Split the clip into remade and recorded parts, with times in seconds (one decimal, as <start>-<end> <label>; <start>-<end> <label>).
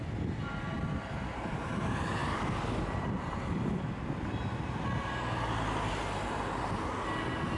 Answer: 0.0-7.6 recorded